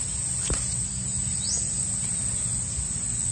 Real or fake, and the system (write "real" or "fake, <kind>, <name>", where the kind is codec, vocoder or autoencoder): real